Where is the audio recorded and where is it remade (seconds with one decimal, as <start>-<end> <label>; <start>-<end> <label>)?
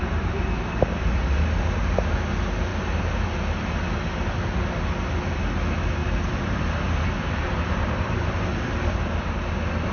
0.0-2.7 recorded; 2.7-3.7 remade; 3.7-6.0 recorded; 6.0-8.4 remade; 8.4-9.9 recorded